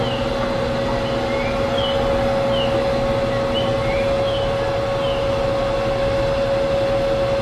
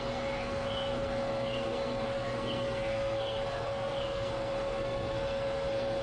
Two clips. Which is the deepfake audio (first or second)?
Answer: second